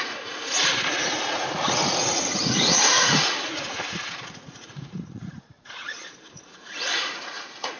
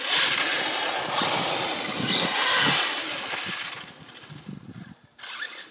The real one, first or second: second